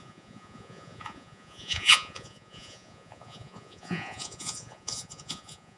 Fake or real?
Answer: fake